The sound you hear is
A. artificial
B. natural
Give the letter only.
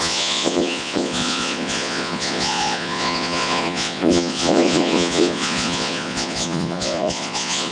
A